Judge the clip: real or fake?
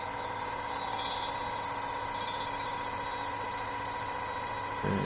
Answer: real